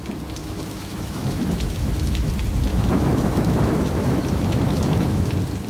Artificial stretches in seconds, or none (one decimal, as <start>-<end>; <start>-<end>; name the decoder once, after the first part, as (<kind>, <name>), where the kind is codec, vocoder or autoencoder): 0.4-2.3 (autoencoder, DAC-VAE); 2.7-5.3